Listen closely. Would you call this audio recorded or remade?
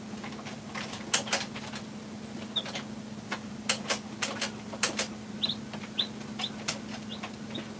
recorded